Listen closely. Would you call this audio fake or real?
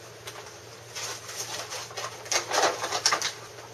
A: real